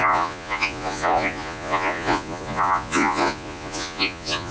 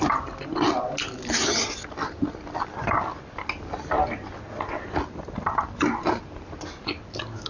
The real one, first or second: second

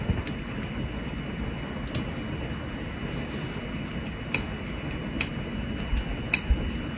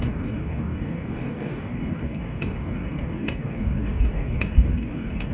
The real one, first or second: first